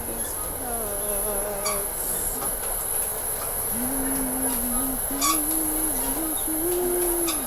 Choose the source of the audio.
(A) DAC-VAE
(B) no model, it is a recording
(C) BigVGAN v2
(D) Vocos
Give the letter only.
B